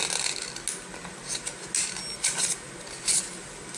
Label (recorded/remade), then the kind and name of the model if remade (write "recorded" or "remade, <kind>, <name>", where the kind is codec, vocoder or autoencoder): recorded